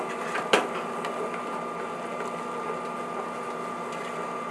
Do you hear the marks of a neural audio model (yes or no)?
no